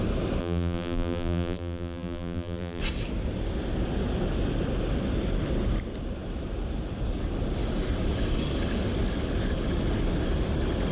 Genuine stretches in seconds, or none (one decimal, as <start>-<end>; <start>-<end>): 0.0-0.4; 2.8-10.9